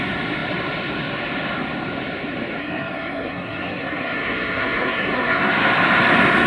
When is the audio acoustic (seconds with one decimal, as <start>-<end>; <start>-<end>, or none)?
0.0-2.6; 5.5-6.5